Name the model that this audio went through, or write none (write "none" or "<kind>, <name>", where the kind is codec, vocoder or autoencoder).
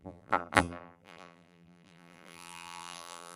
vocoder, BigVGAN v2